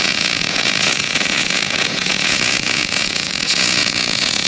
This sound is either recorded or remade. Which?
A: remade